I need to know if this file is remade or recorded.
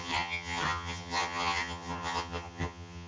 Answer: remade